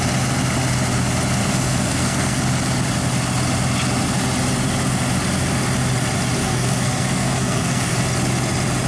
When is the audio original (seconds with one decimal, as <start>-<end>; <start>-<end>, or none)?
0.0-1.4; 2.4-6.4; 8.0-8.9